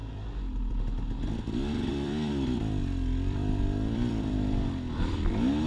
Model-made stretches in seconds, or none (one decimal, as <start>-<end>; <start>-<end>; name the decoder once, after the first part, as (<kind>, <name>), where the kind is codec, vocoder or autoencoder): 0.0-0.8 (vocoder, BigVGAN v2); 1.9-5.3